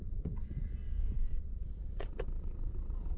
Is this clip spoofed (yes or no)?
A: yes